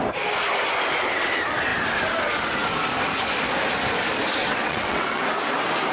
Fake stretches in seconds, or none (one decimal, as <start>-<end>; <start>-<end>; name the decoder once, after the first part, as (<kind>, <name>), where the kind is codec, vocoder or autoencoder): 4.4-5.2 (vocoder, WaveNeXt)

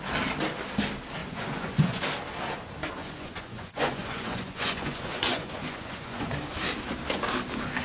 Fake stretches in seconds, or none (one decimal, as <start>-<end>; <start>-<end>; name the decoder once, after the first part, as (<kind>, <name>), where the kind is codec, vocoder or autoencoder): 1.2-2.0 (vocoder, Vocos); 3.0-6.3

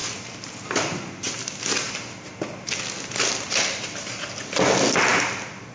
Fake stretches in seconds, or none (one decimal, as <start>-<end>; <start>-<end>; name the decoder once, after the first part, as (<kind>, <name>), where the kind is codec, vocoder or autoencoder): none

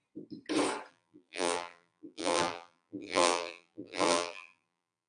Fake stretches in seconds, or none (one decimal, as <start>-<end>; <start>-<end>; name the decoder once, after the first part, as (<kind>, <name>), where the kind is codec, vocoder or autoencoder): 0.9-5.1 (vocoder, BigVGAN v2)